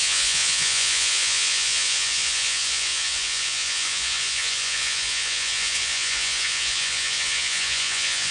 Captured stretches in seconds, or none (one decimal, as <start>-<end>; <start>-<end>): none